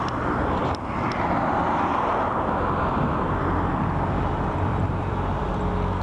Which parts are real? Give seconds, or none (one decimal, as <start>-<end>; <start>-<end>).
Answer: 0.6-4.2